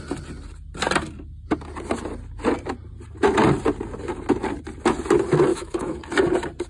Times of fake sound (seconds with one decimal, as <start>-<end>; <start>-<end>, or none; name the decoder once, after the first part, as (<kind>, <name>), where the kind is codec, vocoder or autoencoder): 5.5-6.0 (autoencoder, DAC-VAE)